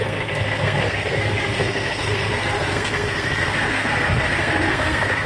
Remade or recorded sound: remade